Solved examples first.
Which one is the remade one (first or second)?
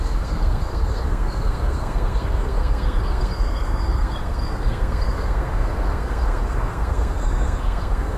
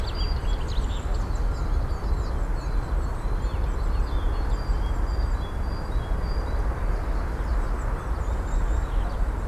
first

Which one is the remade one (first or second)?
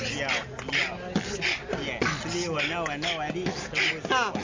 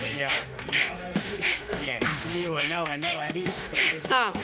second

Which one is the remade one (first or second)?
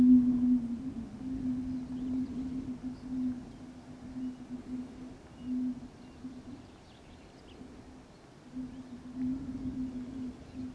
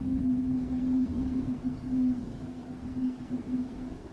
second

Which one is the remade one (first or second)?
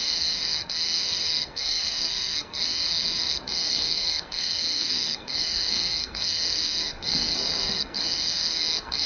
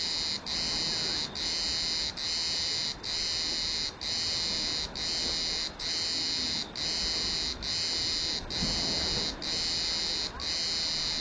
first